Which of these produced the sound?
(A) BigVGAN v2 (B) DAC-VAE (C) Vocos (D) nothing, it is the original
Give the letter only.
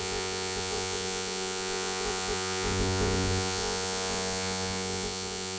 C